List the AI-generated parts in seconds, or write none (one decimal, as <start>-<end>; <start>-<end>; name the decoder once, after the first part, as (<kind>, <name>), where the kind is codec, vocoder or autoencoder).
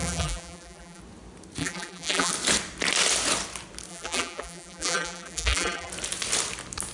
0.0-1.0 (vocoder, BigVGAN v2); 1.6-2.3; 3.9-5.9